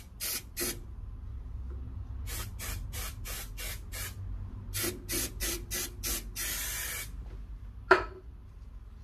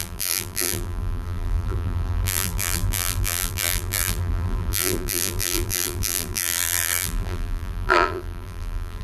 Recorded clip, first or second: first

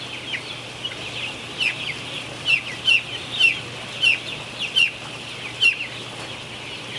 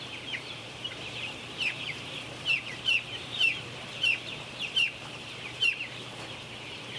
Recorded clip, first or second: first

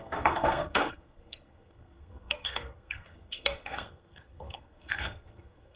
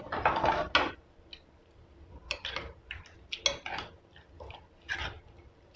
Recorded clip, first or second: second